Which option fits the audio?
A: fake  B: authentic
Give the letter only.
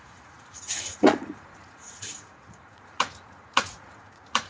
A